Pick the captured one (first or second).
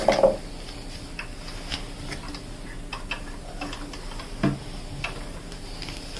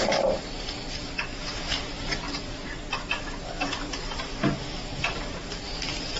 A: first